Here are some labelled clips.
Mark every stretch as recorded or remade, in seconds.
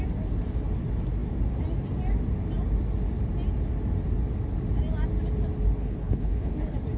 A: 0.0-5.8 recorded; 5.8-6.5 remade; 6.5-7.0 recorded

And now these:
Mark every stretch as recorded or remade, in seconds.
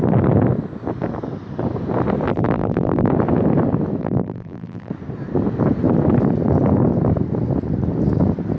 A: 0.0-2.3 recorded; 2.3-3.1 remade; 3.1-4.0 recorded; 4.0-4.9 remade; 4.9-8.6 recorded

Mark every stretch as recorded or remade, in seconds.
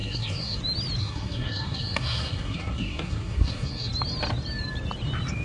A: 0.0-0.6 remade; 0.6-1.0 recorded; 1.0-3.9 remade; 3.9-5.4 recorded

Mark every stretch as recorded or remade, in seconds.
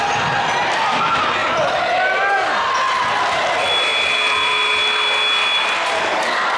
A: 0.0-1.4 recorded; 1.4-2.0 remade; 2.0-3.9 recorded; 3.9-4.8 remade; 4.8-6.6 recorded